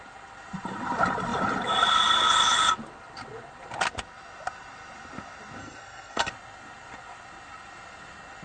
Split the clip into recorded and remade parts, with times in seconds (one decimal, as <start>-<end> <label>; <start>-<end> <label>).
0.0-5.6 recorded; 5.6-6.3 remade; 6.3-8.4 recorded